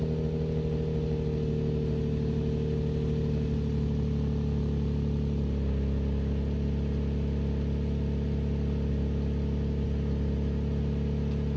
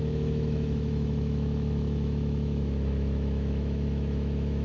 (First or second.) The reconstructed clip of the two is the second